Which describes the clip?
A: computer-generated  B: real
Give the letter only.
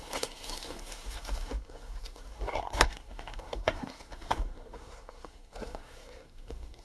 A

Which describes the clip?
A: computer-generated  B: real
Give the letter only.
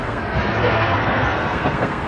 A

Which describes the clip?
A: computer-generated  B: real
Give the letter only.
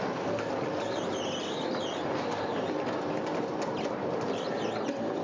B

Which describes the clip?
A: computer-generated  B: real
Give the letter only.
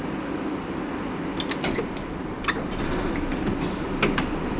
B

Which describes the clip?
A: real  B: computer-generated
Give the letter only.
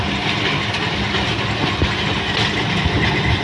A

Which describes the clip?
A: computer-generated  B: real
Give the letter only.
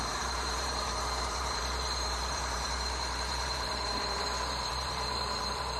A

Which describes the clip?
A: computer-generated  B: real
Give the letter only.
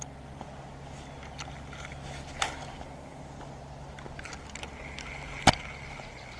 B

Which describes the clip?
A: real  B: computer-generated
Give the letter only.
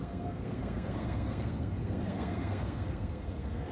B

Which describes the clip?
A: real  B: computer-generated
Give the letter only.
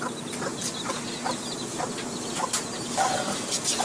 A